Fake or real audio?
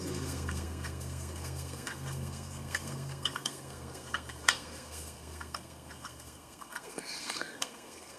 fake